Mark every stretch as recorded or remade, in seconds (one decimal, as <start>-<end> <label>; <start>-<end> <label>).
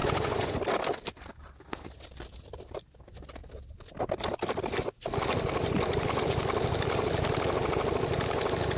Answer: 0.0-0.6 remade; 0.6-8.8 recorded